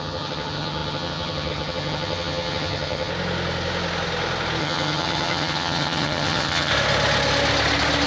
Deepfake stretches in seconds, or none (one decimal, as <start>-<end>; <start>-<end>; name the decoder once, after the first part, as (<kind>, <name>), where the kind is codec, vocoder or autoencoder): 0.0-3.1 (vocoder, HiFi-GAN); 4.6-6.7